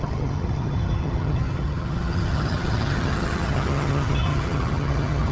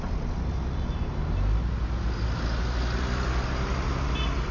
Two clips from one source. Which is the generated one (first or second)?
first